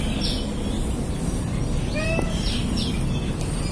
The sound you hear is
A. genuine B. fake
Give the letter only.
A